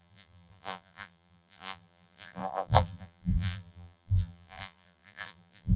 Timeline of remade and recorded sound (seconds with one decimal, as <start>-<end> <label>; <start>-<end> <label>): 0.0-5.8 remade